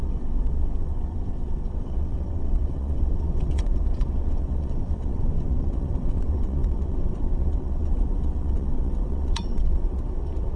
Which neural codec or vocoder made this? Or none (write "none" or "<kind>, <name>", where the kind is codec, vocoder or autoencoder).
vocoder, WaveNeXt